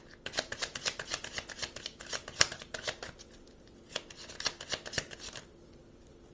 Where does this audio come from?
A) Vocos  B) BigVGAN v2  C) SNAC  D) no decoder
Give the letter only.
D